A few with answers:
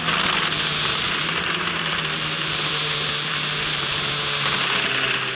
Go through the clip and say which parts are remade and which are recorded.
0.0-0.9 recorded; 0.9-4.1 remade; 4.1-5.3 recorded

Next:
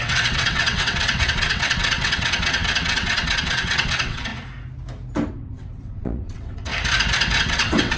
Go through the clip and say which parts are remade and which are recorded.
0.0-4.3 remade; 4.3-5.3 recorded; 5.3-6.7 remade; 6.7-7.4 recorded; 7.4-8.0 remade

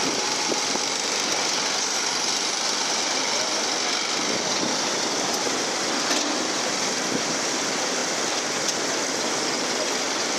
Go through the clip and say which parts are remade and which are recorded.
0.0-10.4 recorded

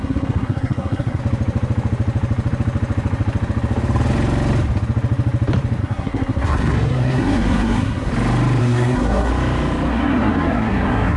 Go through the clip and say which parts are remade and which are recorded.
0.0-1.2 remade; 1.2-5.8 recorded; 5.8-8.1 remade; 8.1-8.6 recorded; 8.6-9.3 remade; 9.3-9.9 recorded; 9.9-11.2 remade